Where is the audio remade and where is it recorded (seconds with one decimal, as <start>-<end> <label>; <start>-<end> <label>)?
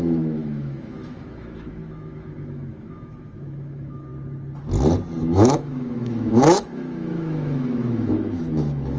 0.0-4.1 remade; 4.1-5.2 recorded; 5.2-9.0 remade